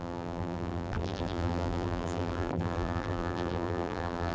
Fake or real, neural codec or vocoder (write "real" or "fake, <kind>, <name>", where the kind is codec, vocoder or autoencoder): fake, vocoder, BigVGAN v2